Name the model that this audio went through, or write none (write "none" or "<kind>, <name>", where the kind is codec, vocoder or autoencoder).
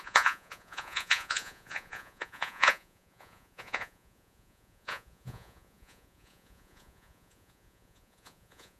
vocoder, Vocos